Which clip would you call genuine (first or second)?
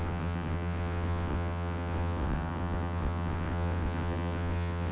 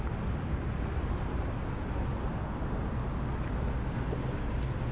second